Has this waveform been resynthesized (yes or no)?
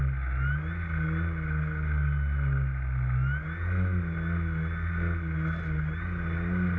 no